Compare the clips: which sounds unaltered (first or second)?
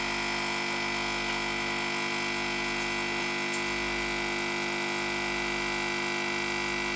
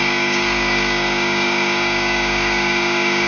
first